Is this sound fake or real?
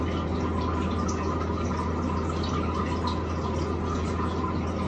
real